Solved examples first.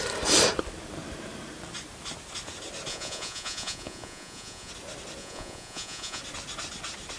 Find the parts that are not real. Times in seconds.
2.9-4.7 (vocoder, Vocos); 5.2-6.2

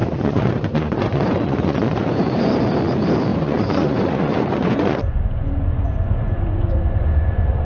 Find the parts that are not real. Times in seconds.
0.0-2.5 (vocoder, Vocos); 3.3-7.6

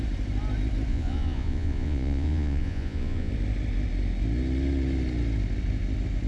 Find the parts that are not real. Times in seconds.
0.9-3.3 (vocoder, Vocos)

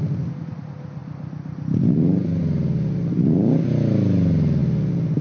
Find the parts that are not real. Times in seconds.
none

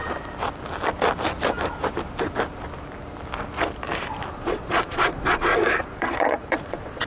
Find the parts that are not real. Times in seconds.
4.3-5.5 (vocoder, Vocos); 6.0-7.1